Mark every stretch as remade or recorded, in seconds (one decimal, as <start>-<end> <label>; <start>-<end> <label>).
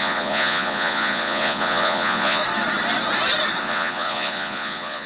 0.0-2.4 remade; 2.4-3.6 recorded; 3.6-5.1 remade